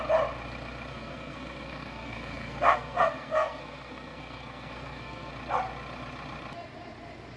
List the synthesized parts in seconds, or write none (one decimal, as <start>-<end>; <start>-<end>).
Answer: 0.9-5.3

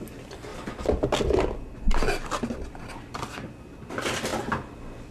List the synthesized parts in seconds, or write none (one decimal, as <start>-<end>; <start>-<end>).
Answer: none

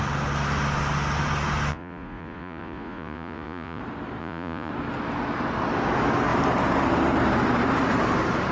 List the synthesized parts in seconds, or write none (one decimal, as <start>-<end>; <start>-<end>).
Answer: 1.7-3.8; 4.2-4.7

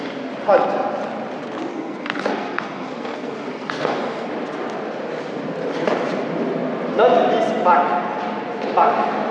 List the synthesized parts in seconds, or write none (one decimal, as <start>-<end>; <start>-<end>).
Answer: 1.7-4.3

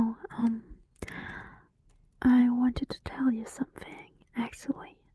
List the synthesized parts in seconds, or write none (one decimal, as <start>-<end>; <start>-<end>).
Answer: 0.4-1.0

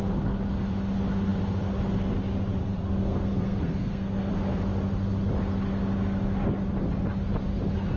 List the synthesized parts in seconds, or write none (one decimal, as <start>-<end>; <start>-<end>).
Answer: 2.6-4.3